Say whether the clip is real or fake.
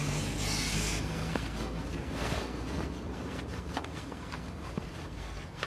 fake